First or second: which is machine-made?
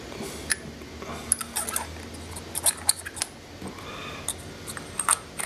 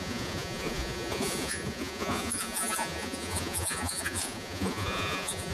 second